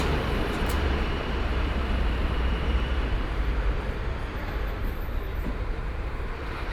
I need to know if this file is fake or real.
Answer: fake